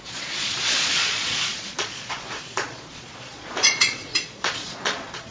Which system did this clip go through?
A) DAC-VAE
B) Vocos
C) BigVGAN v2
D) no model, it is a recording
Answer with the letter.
B